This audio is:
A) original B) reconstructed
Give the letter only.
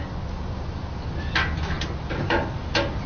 A